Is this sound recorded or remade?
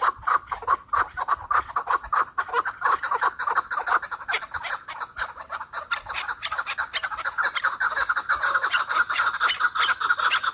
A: remade